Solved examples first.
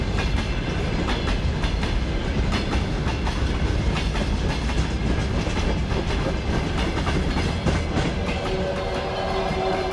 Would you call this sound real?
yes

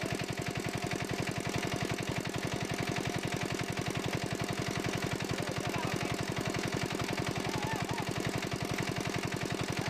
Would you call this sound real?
yes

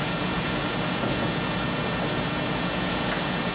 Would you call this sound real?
no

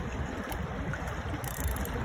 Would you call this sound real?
yes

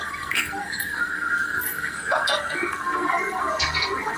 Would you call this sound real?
no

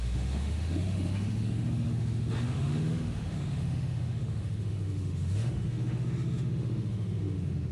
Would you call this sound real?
no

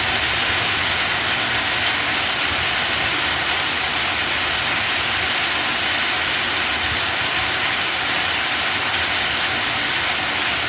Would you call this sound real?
yes